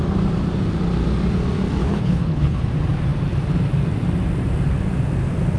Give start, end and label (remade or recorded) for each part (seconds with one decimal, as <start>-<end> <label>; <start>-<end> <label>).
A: 0.0-1.8 recorded; 1.8-2.6 remade; 2.6-5.6 recorded